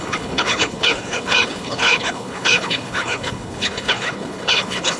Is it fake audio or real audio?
fake